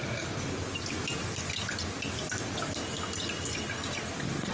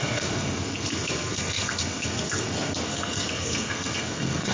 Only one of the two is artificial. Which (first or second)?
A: second